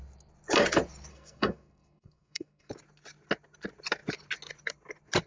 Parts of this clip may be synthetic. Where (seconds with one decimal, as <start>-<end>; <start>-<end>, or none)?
1.1-2.7